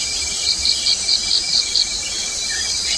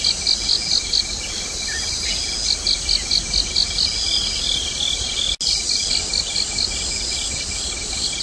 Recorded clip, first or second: second